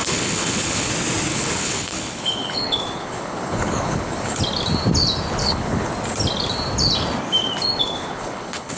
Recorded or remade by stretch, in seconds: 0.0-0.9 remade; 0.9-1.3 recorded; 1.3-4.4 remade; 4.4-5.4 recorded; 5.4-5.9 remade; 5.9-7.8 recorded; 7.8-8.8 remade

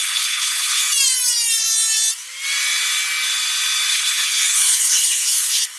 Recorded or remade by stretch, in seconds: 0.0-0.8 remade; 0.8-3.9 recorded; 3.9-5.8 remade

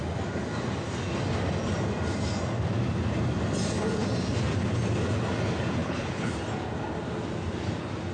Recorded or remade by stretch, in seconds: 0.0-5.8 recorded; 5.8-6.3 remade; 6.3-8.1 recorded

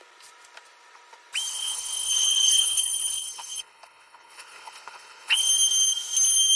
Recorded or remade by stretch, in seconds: 0.0-1.5 recorded; 1.5-5.5 remade; 5.5-6.6 recorded

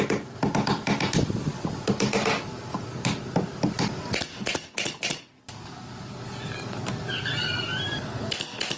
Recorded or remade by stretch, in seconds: 0.0-8.8 recorded

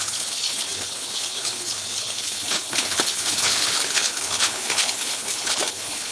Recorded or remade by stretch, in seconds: 0.0-6.1 remade

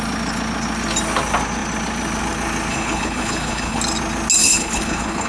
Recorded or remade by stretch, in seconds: 0.0-2.7 recorded; 2.7-3.8 remade; 3.8-4.4 recorded; 4.4-5.3 remade

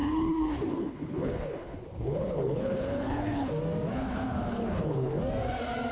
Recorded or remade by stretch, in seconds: 0.0-3.5 remade; 3.5-3.9 recorded; 3.9-5.2 remade; 5.2-5.9 recorded